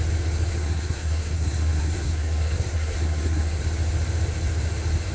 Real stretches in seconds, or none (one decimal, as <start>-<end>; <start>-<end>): 0.0-0.5; 3.6-5.1

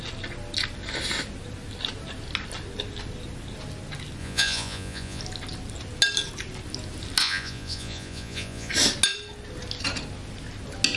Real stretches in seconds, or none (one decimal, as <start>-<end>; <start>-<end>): 0.0-4.2; 5.2-7.2; 8.7-11.0

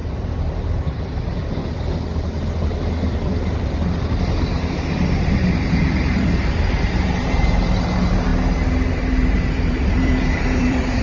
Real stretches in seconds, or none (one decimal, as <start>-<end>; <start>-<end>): 1.6-5.3; 8.3-8.9